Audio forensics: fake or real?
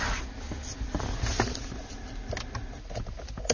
real